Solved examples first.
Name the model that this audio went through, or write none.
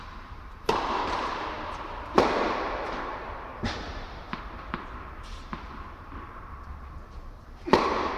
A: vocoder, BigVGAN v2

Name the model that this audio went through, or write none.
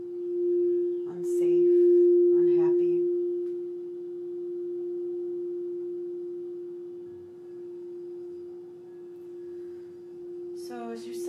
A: none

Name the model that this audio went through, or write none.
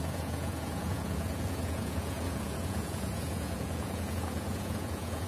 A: vocoder, Vocos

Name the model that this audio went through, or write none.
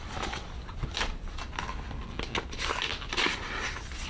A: none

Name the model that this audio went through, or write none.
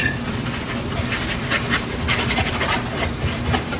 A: none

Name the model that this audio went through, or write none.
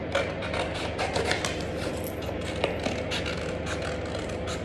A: none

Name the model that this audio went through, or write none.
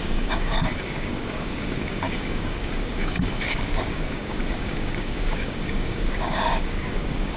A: codec, DAC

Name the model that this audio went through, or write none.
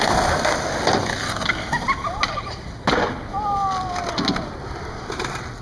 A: none